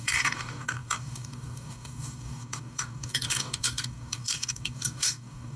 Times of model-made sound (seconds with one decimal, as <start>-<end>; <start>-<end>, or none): 0.0-5.6